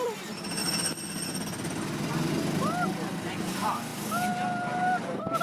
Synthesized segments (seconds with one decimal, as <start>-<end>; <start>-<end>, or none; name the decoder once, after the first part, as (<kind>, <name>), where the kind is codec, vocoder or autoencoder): none